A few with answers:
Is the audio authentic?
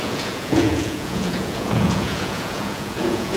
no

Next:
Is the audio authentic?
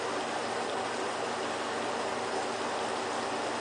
yes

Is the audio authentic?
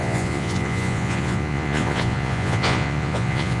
no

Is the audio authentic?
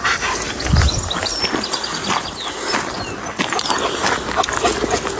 yes